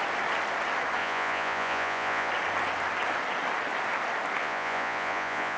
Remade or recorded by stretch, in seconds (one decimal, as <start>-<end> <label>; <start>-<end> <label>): 0.0-1.0 recorded; 1.0-2.3 remade; 2.3-4.4 recorded; 4.4-5.6 remade